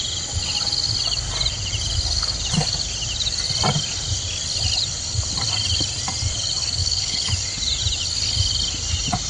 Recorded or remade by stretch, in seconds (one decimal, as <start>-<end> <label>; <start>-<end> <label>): 0.0-6.8 recorded; 6.8-7.3 remade; 7.3-9.3 recorded